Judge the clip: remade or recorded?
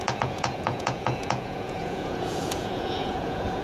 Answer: remade